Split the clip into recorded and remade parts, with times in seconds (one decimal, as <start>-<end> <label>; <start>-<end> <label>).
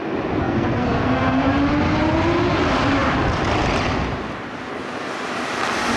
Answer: 0.0-0.4 recorded; 0.4-1.5 remade; 1.5-6.0 recorded